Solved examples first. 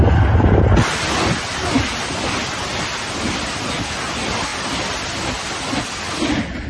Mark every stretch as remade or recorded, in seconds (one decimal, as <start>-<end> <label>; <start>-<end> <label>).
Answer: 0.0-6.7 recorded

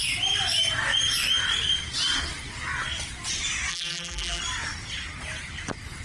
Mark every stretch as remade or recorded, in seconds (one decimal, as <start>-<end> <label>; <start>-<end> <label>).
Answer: 0.0-3.7 recorded; 3.7-4.4 remade; 4.4-6.0 recorded

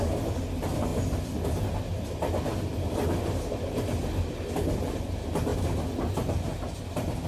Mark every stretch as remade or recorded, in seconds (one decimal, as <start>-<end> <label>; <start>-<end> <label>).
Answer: 0.0-7.3 recorded

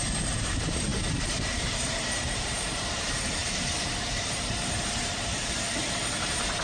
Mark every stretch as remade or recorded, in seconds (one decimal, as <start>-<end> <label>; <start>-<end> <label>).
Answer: 0.0-6.6 remade

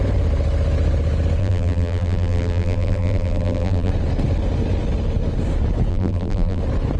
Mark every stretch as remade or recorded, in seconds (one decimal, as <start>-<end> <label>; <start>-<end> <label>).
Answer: 0.0-1.4 recorded; 1.4-3.9 remade; 3.9-5.9 recorded; 5.9-6.6 remade; 6.6-7.0 recorded

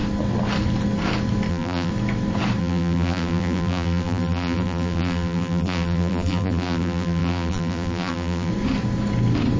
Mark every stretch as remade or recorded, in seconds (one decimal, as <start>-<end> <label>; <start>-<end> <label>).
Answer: 0.0-1.5 recorded; 1.5-1.9 remade; 1.9-2.6 recorded; 2.6-8.5 remade; 8.5-9.6 recorded

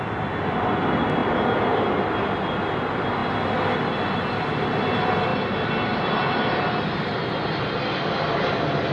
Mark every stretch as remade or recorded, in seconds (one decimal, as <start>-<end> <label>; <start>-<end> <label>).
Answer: 0.0-8.9 recorded